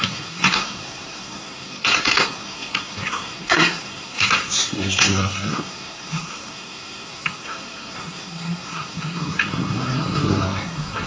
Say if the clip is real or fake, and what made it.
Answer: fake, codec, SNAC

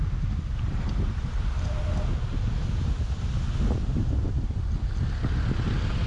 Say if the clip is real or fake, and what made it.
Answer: real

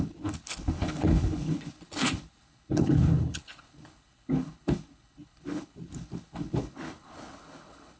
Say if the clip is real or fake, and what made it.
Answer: fake, codec, HILCodec